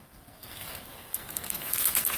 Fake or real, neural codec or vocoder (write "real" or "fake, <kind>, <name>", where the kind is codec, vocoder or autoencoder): fake, codec, SNAC